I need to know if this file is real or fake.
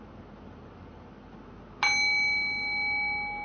real